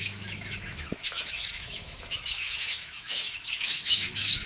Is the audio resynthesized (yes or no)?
yes